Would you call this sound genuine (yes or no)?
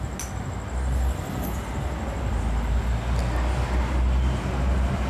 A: yes